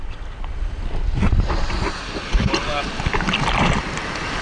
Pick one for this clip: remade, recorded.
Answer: recorded